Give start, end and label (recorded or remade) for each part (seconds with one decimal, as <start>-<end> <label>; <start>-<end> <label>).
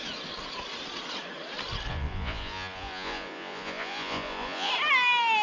0.0-1.9 recorded; 1.9-4.7 remade; 4.7-5.4 recorded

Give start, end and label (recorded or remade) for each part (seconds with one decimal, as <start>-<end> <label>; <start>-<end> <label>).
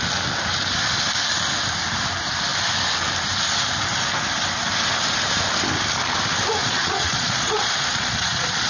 0.0-6.6 recorded; 6.6-8.7 remade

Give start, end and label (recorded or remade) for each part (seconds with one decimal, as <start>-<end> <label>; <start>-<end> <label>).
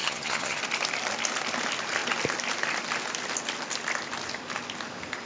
0.0-0.6 remade; 0.6-5.3 recorded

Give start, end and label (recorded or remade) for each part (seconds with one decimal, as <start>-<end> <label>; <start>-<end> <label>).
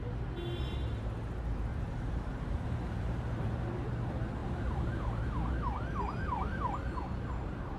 0.0-1.7 recorded; 1.7-3.9 remade; 3.9-4.4 recorded; 4.4-5.5 remade; 5.5-7.8 recorded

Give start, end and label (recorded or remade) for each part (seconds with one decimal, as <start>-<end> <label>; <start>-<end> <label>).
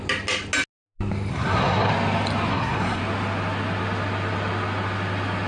0.0-1.3 recorded; 1.3-1.9 remade; 1.9-2.5 recorded; 2.5-3.0 remade; 3.0-5.5 recorded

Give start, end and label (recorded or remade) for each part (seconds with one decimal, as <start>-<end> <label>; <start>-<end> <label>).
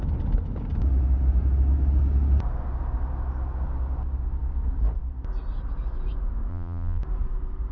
0.0-6.5 recorded; 6.5-7.0 remade; 7.0-7.7 recorded